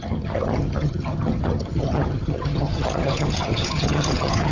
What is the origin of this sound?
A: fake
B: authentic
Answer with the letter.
A